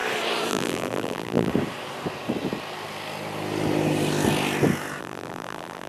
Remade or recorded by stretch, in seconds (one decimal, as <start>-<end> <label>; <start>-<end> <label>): 0.0-0.5 recorded; 0.5-1.5 remade; 1.5-5.0 recorded; 5.0-5.9 remade